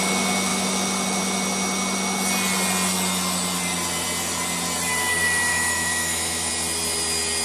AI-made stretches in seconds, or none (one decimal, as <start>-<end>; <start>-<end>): 5.5-6.5